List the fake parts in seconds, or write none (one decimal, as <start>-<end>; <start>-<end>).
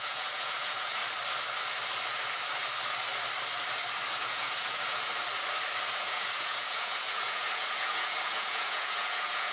0.0-1.0; 4.2-5.1; 5.9-9.5